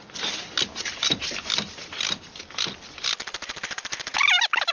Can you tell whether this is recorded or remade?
recorded